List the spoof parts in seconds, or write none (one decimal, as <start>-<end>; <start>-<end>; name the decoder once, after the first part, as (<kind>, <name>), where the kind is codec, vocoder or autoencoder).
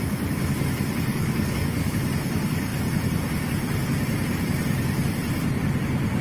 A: 1.1-2.0 (codec, DAC)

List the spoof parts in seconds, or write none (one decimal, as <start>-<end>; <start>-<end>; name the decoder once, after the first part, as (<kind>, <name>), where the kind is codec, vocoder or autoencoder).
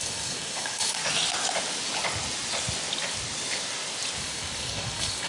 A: 0.0-1.0 (codec, DAC); 4.2-5.3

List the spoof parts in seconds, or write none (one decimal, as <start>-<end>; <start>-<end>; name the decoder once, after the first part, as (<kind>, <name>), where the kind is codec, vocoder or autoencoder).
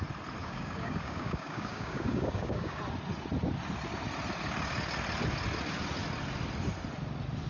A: 0.4-2.8 (codec, DAC)